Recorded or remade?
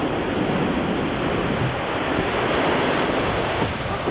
recorded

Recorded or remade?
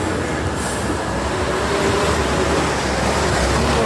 recorded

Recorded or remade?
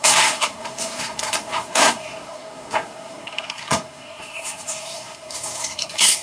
remade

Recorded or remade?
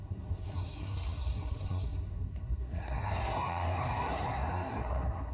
remade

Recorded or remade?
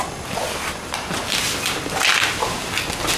recorded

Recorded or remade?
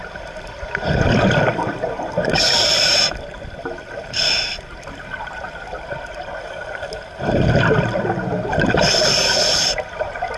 recorded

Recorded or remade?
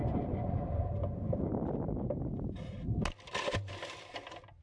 recorded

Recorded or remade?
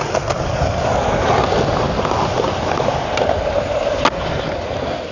recorded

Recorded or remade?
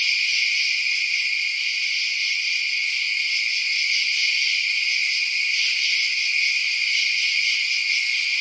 recorded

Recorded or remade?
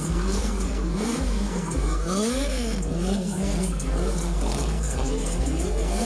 remade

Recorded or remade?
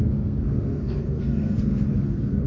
remade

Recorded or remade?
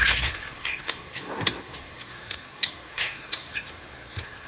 remade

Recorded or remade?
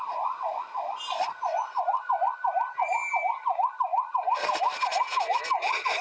recorded